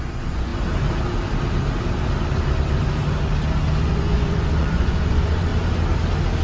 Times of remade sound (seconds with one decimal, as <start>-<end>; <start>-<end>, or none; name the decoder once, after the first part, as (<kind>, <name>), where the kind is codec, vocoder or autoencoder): 0.0-0.5 (vocoder, Vocos); 3.8-5.5

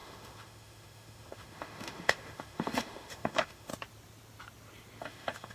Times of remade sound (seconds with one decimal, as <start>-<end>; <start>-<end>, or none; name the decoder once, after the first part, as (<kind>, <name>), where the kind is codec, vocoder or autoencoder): 0.0-3.7 (autoencoder, DAC-VAE); 5.0-5.5

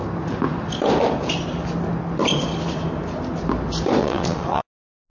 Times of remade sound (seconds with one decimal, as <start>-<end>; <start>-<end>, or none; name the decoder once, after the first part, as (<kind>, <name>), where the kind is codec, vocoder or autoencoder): 4.0-4.6 (vocoder, Vocos)

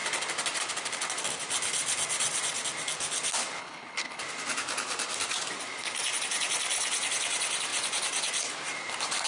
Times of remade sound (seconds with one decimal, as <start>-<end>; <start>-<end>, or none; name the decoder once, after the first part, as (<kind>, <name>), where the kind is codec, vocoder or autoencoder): 3.6-4.2 (codec, HILCodec)

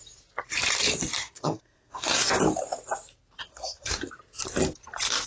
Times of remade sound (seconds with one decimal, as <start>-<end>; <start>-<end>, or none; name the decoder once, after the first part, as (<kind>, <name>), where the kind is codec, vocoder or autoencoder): 1.2-2.3 (codec, SNAC); 3.5-4.1

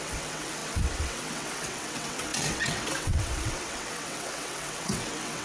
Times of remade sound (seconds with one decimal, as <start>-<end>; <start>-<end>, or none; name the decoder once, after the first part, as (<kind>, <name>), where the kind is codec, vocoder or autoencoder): 0.0-5.4 (vocoder, WaveNeXt)